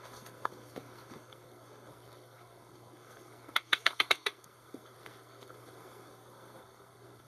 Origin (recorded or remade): remade